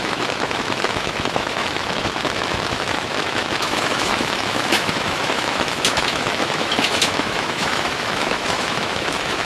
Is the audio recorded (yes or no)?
no